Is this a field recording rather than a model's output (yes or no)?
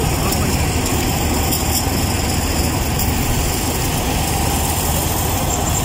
yes